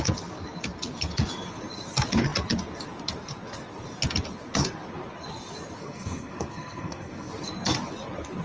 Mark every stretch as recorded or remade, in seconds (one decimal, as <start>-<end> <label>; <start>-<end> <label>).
0.0-5.8 recorded; 5.8-7.3 remade; 7.3-8.4 recorded